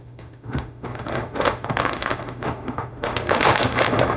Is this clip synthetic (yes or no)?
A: yes